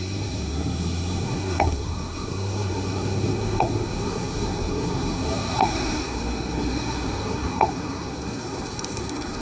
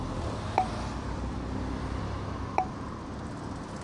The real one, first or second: second